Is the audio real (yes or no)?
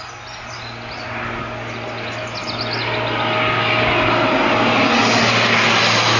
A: yes